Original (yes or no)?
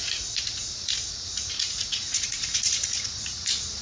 no